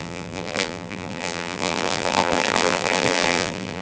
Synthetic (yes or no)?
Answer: yes